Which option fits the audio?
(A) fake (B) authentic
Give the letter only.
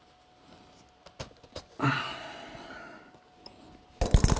B